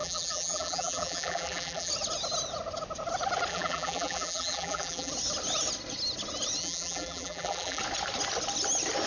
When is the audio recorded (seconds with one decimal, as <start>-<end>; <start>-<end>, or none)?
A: 1.9-3.5; 5.1-6.6; 7.8-9.1